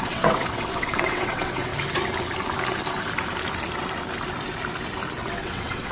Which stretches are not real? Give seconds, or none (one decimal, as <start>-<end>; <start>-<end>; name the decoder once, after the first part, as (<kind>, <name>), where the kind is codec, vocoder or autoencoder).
0.0-1.7 (vocoder, WaveNeXt); 5.2-5.9